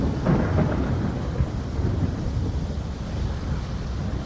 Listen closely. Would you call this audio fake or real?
real